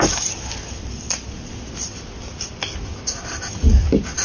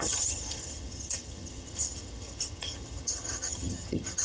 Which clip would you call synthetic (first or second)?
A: second